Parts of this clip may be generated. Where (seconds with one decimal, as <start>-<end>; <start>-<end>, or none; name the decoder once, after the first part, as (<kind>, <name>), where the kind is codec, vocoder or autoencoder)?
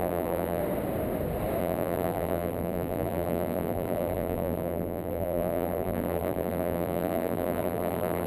0.0-0.6 (vocoder, BigVGAN v2); 1.6-8.3